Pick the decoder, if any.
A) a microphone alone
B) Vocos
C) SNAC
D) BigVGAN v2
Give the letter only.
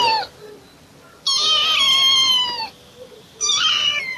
A